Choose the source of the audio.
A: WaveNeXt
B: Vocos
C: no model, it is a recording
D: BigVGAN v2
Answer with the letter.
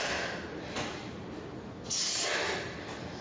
C